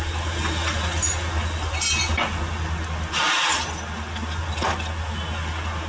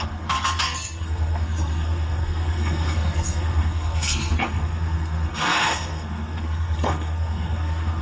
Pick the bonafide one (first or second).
first